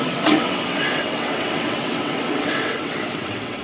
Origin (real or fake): fake